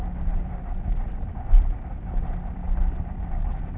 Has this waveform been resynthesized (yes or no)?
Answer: no